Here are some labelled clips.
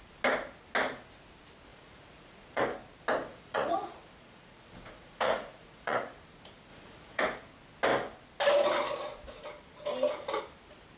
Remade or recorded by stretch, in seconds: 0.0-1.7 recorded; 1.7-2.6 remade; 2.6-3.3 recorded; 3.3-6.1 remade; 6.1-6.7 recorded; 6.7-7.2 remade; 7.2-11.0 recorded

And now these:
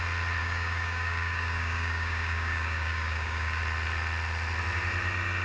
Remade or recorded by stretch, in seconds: 0.0-0.4 recorded; 0.4-3.6 remade; 3.6-5.4 recorded